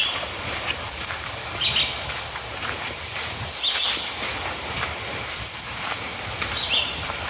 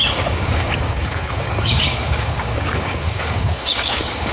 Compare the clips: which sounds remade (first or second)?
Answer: second